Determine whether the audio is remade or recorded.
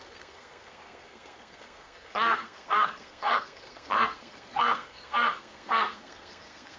remade